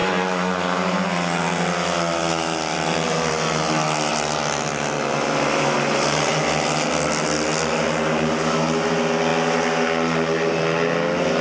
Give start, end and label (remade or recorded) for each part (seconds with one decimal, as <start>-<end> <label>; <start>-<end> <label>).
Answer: 0.0-11.4 recorded